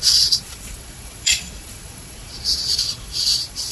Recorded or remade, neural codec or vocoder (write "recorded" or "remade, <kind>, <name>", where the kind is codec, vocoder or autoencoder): remade, vocoder, Vocos